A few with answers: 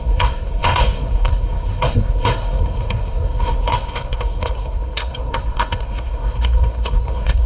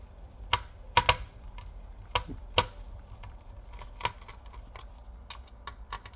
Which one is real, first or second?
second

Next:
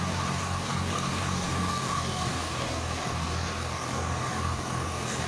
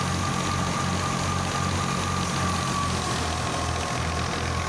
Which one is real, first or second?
second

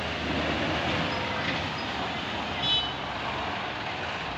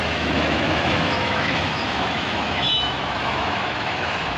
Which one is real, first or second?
first